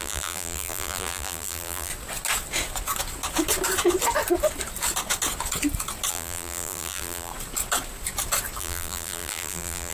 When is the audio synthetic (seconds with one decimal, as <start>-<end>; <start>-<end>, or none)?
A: 0.0-1.9; 6.1-7.3; 8.6-9.9